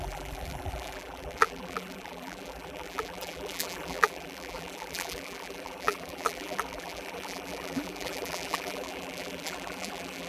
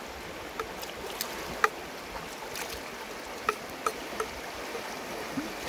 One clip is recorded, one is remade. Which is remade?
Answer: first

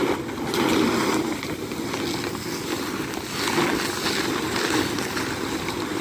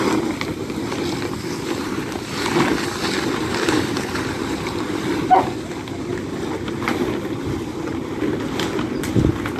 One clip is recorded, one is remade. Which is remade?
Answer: second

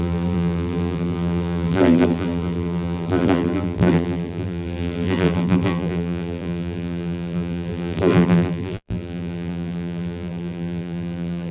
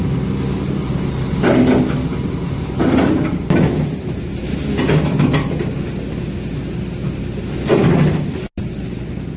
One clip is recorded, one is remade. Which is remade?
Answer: first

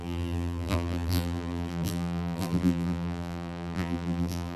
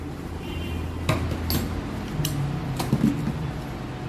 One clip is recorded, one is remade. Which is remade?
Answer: first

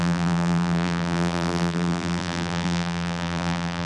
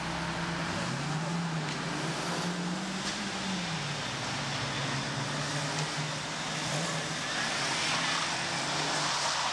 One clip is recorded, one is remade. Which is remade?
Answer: first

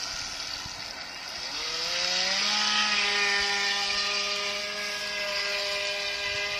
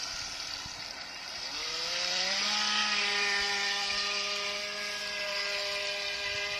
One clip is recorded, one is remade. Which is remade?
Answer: second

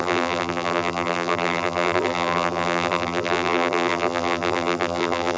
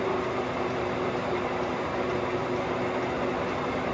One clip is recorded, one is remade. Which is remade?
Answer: first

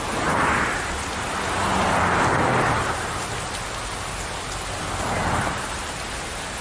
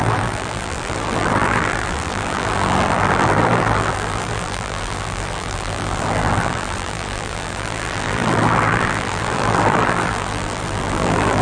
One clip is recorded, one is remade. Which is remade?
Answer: second